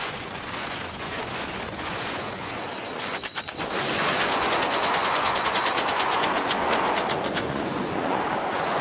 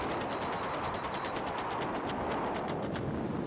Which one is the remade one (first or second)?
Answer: first